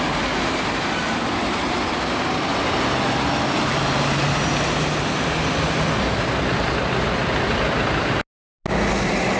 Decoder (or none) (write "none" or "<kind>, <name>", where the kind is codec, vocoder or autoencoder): none